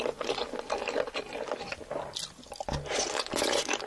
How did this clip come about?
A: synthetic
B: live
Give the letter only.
B